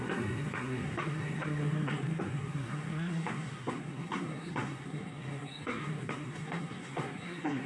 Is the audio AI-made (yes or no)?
yes